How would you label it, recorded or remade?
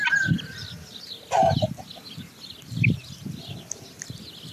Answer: recorded